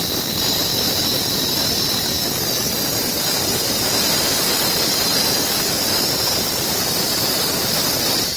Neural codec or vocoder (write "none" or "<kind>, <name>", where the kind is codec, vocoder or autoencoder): none